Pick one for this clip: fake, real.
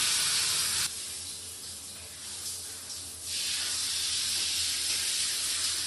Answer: real